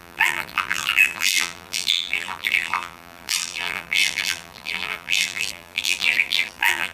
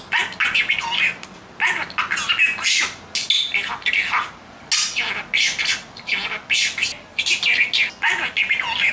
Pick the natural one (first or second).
second